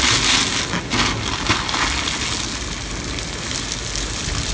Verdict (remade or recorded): recorded